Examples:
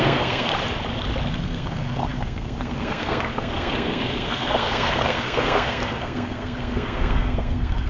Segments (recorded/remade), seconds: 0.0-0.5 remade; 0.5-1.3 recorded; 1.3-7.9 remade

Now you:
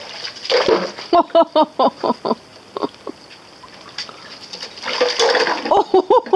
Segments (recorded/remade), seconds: 0.0-6.4 recorded

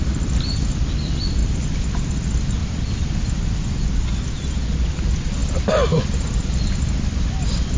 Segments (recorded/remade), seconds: 0.0-5.4 recorded; 5.4-7.3 remade; 7.3-7.8 recorded